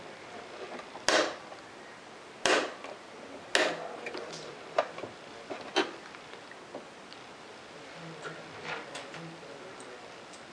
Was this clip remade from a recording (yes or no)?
no